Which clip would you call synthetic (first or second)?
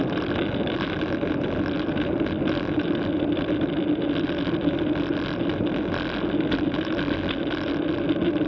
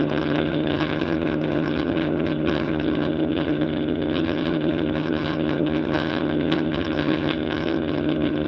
second